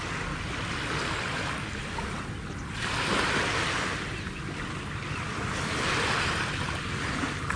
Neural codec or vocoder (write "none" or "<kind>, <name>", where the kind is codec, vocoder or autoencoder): none